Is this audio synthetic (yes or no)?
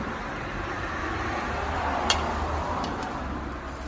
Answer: no